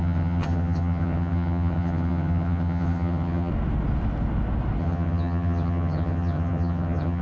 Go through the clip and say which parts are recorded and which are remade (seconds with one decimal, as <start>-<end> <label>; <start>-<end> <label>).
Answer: 0.0-3.5 remade; 3.5-4.8 recorded; 4.8-7.2 remade